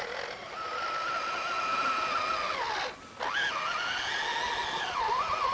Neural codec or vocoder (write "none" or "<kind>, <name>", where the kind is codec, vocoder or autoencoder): none